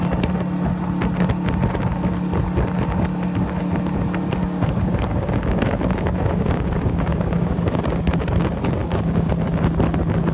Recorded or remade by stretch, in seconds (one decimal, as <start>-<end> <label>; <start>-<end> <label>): 0.0-4.4 recorded; 4.4-7.8 remade; 7.8-8.8 recorded; 8.8-9.3 remade; 9.3-10.3 recorded